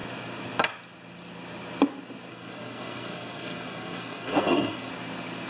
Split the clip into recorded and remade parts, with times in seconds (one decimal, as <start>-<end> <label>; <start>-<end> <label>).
0.0-2.3 recorded; 2.3-4.9 remade; 4.9-5.5 recorded